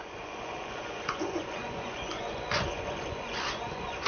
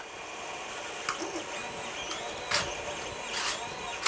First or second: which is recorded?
second